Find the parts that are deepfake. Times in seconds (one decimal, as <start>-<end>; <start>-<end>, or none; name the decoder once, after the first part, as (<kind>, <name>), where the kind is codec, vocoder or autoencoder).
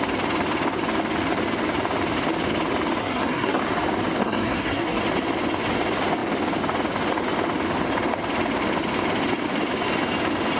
3.0-3.6 (codec, SNAC); 4.2-5.0